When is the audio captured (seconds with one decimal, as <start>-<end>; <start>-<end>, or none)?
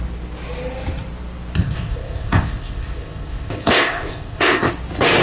0.0-1.6; 4.7-5.2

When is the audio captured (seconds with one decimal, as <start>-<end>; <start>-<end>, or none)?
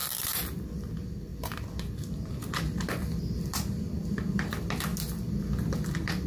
0.9-1.3; 3.8-4.9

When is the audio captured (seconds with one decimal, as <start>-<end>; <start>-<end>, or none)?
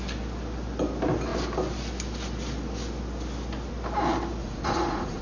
0.0-4.4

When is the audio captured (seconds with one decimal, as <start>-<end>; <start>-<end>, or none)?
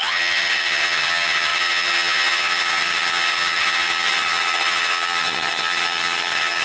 none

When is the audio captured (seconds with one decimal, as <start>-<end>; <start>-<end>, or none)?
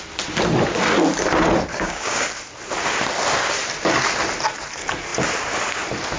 0.0-1.7; 2.3-6.2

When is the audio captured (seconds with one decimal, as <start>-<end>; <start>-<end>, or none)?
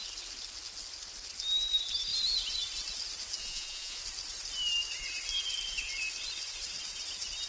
0.0-3.4; 4.0-7.5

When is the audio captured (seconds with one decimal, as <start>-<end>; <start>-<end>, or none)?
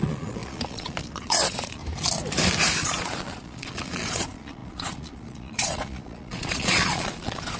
1.8-2.8